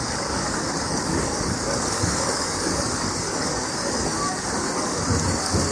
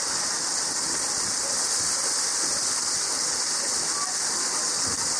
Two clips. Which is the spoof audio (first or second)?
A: first